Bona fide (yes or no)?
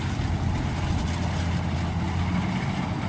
yes